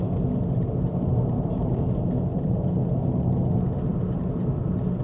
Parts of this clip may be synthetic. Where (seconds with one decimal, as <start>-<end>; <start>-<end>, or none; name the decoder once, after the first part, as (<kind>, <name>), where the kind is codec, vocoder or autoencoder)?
0.9-1.8 (vocoder, BigVGAN v2); 2.3-2.9; 3.9-4.6